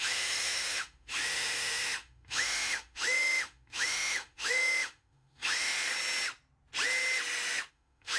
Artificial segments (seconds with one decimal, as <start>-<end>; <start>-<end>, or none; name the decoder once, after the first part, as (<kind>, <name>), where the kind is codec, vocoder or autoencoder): 0.0-5.9 (autoencoder, DAC-VAE); 7.7-8.2